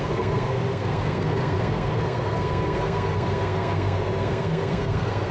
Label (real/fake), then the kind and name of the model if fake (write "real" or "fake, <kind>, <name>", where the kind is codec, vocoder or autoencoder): fake, codec, SNAC